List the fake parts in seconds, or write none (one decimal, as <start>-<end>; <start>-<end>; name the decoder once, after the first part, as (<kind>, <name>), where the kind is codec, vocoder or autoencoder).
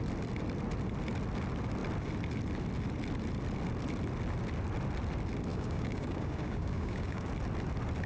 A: 5.5-7.3 (codec, DAC)